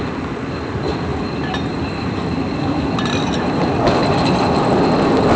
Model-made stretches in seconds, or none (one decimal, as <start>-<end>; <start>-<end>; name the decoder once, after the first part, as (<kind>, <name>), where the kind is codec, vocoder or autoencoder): none